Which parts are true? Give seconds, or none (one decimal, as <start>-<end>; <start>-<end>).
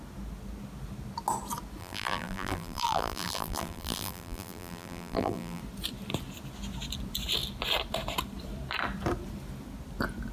0.0-1.8; 5.6-10.3